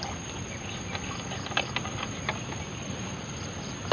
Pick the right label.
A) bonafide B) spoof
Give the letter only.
A